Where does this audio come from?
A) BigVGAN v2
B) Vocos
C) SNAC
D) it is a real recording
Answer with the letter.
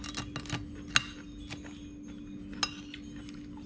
D